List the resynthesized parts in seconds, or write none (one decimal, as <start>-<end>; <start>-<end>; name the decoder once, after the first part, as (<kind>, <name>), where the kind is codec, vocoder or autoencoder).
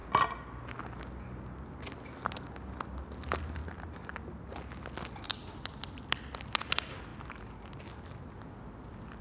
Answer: none